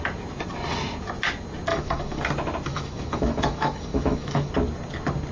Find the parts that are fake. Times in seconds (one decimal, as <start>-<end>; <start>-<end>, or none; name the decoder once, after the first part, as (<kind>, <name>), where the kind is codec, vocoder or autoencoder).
1.7-2.2 (autoencoder, DAC-VAE); 2.7-4.5